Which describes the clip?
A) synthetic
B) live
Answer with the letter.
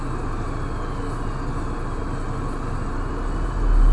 B